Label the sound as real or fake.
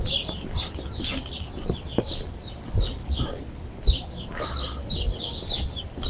real